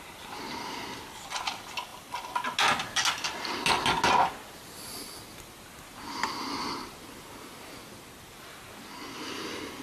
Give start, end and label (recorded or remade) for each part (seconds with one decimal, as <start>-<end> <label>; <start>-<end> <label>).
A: 0.0-9.8 recorded